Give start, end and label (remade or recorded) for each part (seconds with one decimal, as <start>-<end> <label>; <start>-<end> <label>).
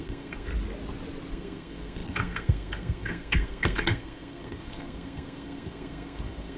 0.0-0.5 remade; 0.5-1.3 recorded; 1.3-6.6 remade